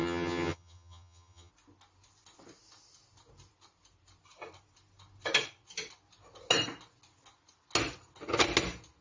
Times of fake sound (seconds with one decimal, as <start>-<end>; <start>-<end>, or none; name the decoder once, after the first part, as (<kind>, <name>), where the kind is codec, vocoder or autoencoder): 0.0-1.5 (vocoder, HiFi-GAN)